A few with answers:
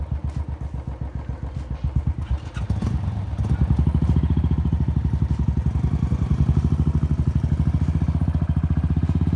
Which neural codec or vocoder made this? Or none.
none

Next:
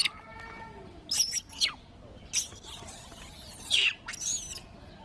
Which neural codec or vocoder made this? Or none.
none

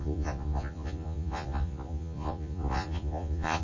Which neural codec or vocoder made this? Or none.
vocoder, Vocos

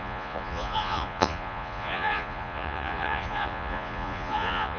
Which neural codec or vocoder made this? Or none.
vocoder, Vocos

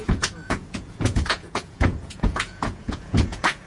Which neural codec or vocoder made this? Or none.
vocoder, Vocos